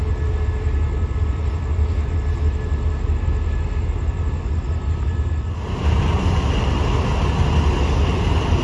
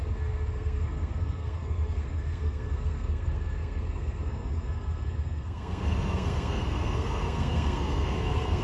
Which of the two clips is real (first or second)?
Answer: first